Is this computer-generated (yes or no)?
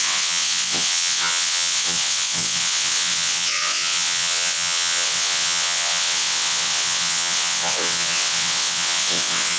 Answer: yes